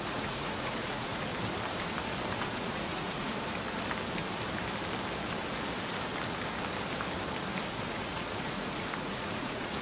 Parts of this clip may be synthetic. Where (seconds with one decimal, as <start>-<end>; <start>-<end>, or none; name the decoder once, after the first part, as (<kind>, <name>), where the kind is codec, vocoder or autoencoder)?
0.0-1.3 (vocoder, Vocos); 2.4-3.3; 7.9-9.8